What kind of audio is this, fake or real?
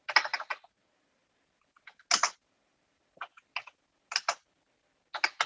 real